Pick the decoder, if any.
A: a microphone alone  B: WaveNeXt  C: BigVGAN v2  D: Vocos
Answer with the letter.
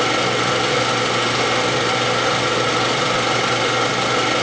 A